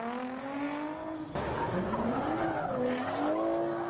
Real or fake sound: real